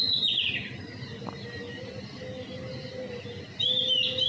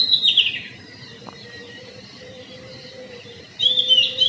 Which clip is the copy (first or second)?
second